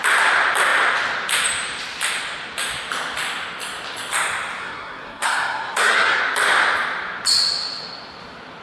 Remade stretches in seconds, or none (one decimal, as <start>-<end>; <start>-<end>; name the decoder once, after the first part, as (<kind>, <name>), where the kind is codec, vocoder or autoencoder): 4.6-6.2 (codec, SNAC)